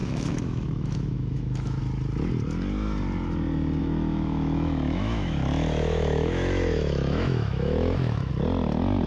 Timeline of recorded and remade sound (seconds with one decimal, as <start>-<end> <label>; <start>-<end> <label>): 0.0-1.8 remade; 1.8-3.8 recorded; 3.8-8.3 remade; 8.3-9.1 recorded